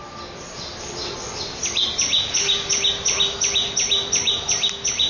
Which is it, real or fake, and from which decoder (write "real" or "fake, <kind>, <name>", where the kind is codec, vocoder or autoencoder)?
real